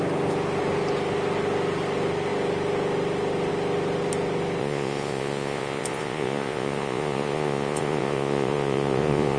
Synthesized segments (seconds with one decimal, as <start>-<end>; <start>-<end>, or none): 4.6-9.4